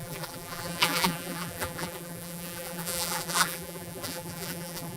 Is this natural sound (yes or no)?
no